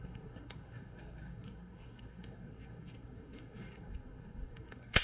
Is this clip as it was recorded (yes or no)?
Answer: no